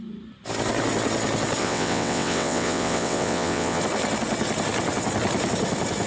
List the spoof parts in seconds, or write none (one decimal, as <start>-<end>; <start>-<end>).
1.6-3.8